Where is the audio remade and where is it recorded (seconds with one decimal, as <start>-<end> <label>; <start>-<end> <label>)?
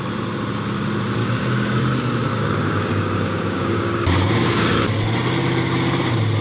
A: 0.0-1.2 recorded; 1.2-1.8 remade; 1.8-2.3 recorded; 2.3-4.9 remade; 4.9-6.4 recorded